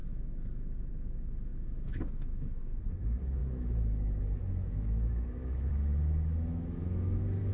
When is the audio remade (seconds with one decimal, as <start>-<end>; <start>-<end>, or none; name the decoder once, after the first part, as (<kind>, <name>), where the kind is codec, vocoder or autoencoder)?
0.0-7.5 (autoencoder, DAC-VAE)

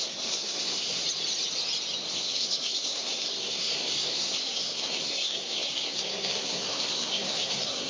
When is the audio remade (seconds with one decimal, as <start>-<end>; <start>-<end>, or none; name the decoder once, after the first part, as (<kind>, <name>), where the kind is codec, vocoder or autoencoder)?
0.0-1.0 (codec, SNAC); 2.1-7.9

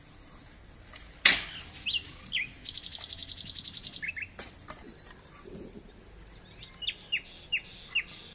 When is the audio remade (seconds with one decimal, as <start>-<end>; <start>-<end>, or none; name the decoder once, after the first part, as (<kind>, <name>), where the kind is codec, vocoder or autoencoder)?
none